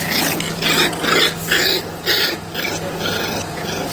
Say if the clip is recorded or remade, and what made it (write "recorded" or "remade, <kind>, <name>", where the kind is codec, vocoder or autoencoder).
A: recorded